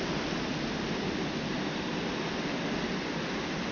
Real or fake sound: real